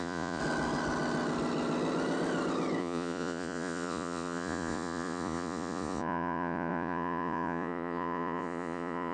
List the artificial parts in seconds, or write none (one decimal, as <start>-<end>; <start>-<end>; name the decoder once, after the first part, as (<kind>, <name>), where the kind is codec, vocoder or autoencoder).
0.0-0.4 (vocoder, Vocos); 2.8-9.1